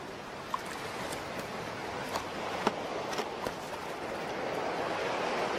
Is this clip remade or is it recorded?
recorded